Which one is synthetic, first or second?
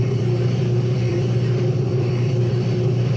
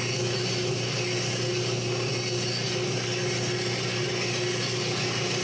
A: first